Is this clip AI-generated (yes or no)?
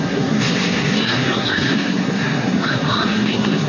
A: yes